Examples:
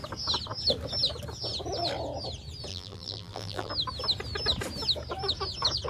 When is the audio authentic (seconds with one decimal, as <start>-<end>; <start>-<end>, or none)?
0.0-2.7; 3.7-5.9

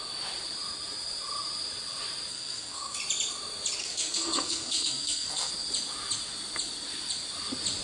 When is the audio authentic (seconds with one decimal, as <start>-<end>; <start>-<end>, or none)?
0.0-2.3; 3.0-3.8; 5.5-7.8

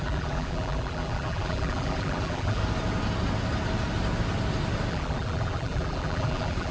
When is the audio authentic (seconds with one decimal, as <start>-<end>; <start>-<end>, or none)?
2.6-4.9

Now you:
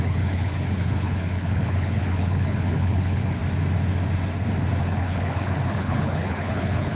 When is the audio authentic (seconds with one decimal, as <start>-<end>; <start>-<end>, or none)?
3.4-4.8

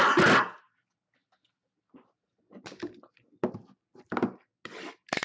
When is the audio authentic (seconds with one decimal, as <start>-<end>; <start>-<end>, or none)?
0.0-5.2

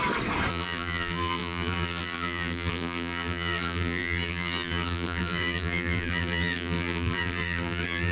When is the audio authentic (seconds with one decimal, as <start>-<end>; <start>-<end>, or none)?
0.0-0.5

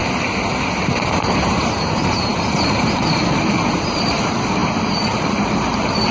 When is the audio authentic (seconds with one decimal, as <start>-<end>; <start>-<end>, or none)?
0.0-0.7

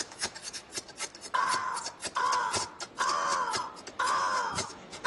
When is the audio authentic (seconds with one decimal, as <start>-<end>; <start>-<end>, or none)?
0.7-3.8